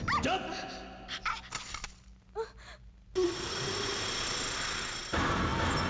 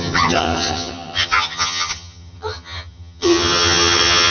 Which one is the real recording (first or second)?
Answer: first